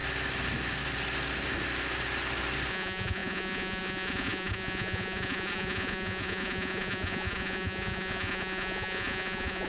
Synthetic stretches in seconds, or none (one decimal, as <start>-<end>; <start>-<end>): 2.7-9.7